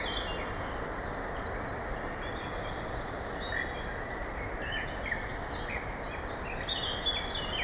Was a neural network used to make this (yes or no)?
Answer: no